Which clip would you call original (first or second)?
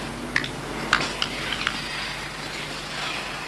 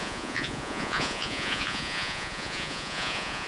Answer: first